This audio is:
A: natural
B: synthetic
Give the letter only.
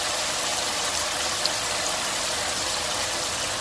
A